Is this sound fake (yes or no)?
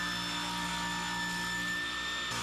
no